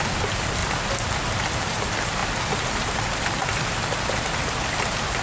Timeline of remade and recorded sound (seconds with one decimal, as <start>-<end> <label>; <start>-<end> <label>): 0.0-5.2 recorded